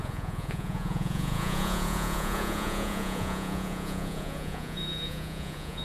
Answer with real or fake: fake